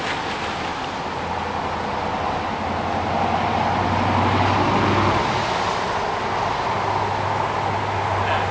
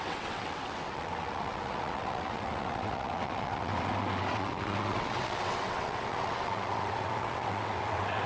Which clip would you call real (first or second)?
first